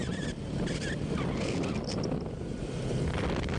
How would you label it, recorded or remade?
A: recorded